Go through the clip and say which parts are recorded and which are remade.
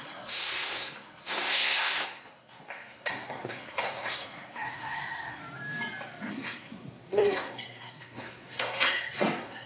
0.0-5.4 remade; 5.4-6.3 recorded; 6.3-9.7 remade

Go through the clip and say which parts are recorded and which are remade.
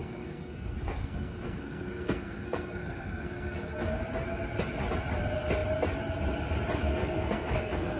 0.0-4.0 remade; 4.0-6.9 recorded; 6.9-8.0 remade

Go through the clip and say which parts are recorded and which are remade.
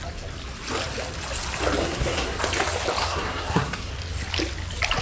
0.0-1.8 recorded; 1.8-2.4 remade; 2.4-3.0 recorded; 3.0-3.9 remade; 3.9-5.0 recorded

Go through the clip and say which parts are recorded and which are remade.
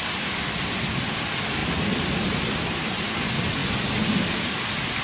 0.0-5.0 recorded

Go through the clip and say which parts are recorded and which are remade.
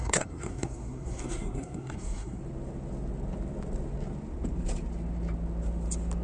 0.0-2.4 remade; 2.4-6.2 recorded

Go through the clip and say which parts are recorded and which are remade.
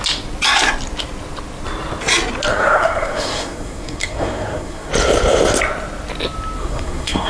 0.0-2.5 recorded; 2.5-4.9 remade; 4.9-6.6 recorded; 6.6-7.3 remade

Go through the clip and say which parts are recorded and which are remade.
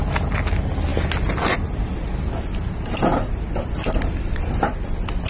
0.0-5.3 recorded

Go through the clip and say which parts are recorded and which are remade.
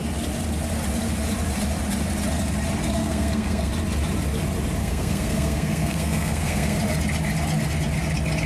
0.0-3.0 recorded; 3.0-3.7 remade; 3.7-4.8 recorded; 4.8-6.8 remade; 6.8-8.5 recorded